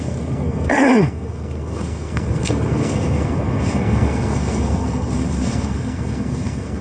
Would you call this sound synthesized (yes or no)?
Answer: yes